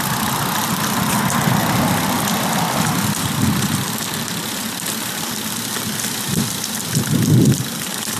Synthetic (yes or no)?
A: no